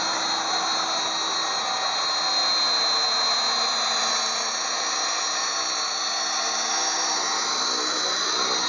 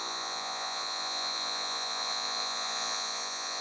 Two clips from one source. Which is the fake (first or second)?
second